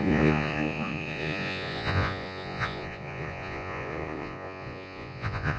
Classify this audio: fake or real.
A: fake